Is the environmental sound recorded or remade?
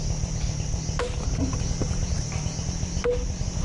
recorded